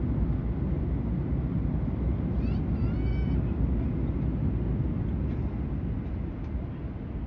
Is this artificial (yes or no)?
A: no